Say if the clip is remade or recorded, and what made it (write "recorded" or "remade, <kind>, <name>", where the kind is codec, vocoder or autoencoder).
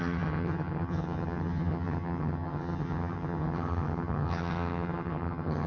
remade, vocoder, HiFi-GAN